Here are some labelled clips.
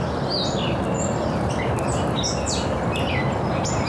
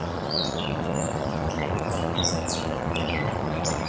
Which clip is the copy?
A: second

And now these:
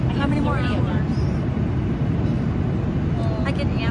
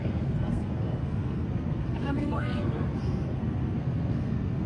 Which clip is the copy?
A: second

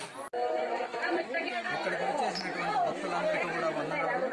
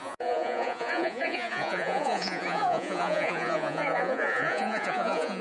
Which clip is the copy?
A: second